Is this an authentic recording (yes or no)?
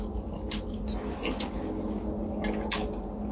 yes